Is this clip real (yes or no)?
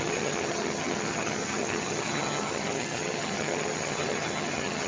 no